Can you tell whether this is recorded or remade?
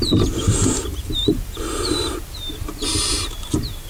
remade